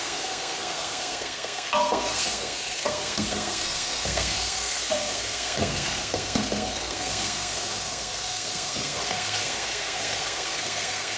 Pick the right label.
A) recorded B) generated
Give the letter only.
B